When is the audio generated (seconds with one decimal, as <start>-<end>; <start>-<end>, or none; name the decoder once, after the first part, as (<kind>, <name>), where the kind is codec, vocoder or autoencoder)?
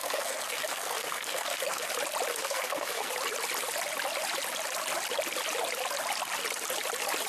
0.0-1.9 (codec, SNAC); 2.3-3.1